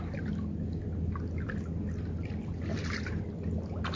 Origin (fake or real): real